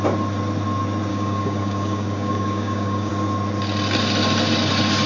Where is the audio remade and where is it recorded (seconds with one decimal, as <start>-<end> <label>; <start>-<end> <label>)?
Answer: 0.0-1.1 recorded; 1.1-3.1 remade; 3.1-5.1 recorded